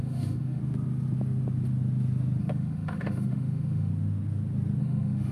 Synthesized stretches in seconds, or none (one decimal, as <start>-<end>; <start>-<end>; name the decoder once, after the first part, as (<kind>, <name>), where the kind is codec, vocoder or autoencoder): 0.0-0.6 (autoencoder, DAC-VAE); 2.4-3.9; 4.8-5.3